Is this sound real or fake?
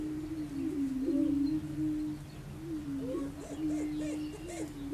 real